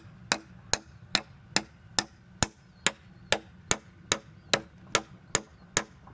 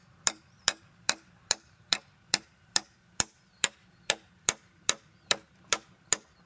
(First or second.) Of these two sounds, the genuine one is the first